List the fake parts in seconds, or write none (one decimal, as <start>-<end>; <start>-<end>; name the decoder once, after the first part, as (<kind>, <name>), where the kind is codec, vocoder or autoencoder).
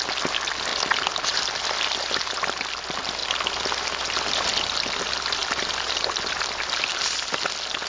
none